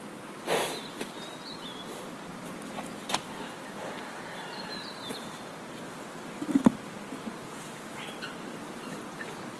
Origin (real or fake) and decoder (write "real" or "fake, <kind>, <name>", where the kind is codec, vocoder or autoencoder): real